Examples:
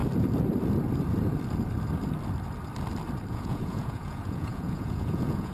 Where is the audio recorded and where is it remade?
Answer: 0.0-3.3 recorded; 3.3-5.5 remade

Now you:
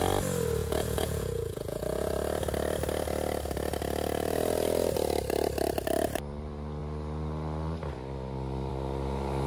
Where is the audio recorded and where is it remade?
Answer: 0.0-0.6 recorded; 0.6-2.1 remade; 2.1-9.5 recorded

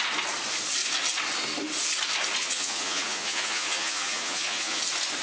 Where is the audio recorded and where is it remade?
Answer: 0.0-2.4 recorded; 2.4-4.8 remade; 4.8-5.2 recorded

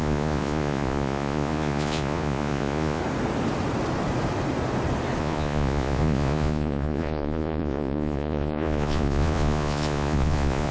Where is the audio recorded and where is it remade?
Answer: 0.0-3.0 remade; 3.0-5.2 recorded; 5.2-10.7 remade

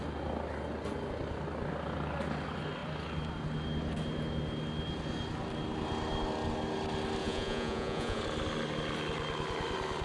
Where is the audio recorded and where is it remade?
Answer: 0.0-7.2 recorded; 7.2-8.2 remade; 8.2-10.0 recorded

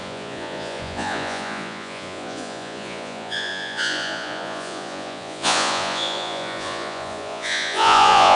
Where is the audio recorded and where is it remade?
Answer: 0.0-8.3 remade